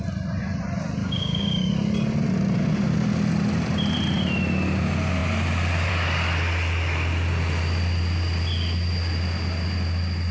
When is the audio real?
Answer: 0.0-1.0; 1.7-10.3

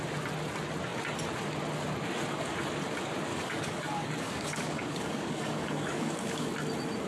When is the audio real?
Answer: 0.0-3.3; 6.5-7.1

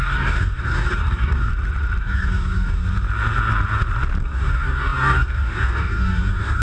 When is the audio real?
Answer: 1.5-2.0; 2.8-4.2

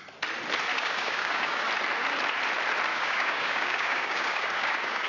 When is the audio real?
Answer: 0.0-0.7; 1.7-2.9

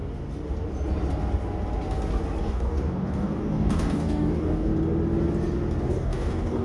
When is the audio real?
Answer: 0.0-2.4; 4.7-5.8

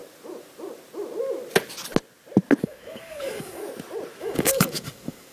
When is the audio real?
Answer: 0.0-2.6; 3.6-4.2